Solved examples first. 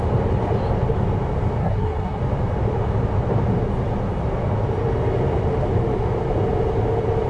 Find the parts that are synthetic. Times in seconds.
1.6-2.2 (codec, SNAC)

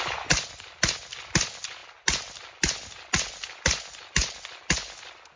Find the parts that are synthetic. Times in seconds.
none

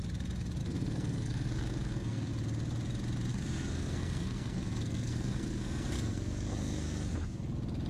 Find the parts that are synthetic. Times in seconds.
0.6-2.3 (codec, SNAC); 3.3-7.4

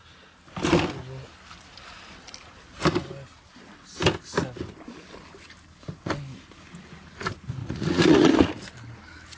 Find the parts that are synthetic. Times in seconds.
7.6-8.3 (vocoder, Vocos)

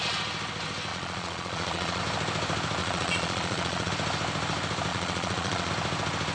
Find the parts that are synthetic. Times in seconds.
0.9-2.0 (vocoder, Vocos); 2.8-3.9; 4.9-5.7

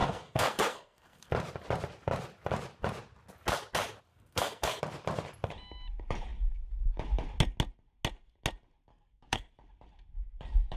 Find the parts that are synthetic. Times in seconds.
0.0-1.3 (codec, SNAC); 4.1-4.8; 8.9-9.5

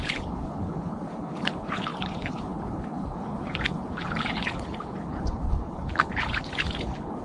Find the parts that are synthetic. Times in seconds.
0.0-7.2 (codec, HILCodec)